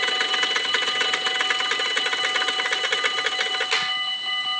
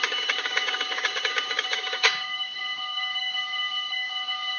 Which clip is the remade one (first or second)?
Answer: second